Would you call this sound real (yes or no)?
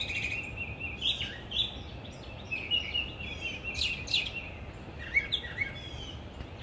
yes